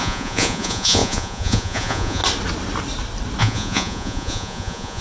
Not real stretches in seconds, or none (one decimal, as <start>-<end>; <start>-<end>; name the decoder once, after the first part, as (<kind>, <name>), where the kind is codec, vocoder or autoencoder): 0.0-2.2 (vocoder, Vocos); 3.4-5.0